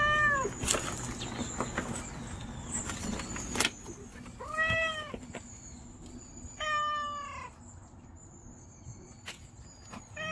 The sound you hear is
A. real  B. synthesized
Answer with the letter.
A